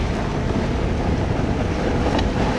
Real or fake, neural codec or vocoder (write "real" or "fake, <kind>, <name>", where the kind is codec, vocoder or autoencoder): real